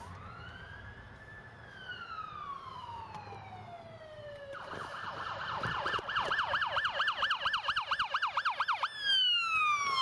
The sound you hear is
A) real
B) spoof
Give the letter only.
A